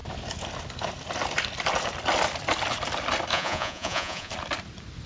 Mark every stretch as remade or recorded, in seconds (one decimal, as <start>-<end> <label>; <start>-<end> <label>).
0.0-3.3 recorded; 3.3-4.3 remade; 4.3-5.1 recorded